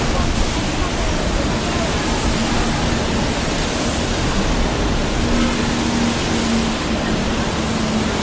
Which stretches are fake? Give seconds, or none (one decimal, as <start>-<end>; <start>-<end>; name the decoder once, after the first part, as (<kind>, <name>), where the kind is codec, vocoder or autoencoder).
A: none